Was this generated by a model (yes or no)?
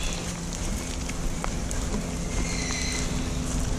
no